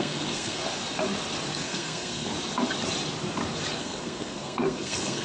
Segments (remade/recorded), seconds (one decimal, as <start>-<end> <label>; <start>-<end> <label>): 0.0-0.6 remade; 0.6-1.6 recorded; 1.6-2.3 remade; 2.3-3.8 recorded; 3.8-5.2 remade